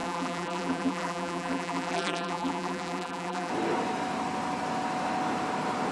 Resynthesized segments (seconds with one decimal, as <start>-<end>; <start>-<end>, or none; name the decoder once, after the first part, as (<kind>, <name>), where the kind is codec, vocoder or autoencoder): 0.0-3.5 (vocoder, BigVGAN v2)

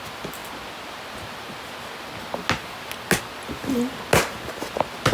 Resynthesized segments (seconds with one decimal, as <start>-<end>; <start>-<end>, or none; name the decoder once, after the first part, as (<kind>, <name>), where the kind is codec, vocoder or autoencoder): none